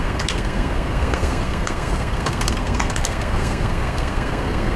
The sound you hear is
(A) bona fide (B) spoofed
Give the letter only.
B